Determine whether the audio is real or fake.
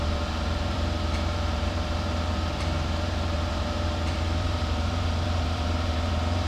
fake